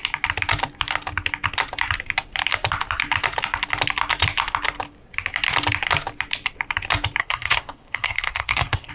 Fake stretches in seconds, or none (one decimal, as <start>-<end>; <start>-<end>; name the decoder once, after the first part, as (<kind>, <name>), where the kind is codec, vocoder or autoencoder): 7.2-8.9 (codec, SNAC)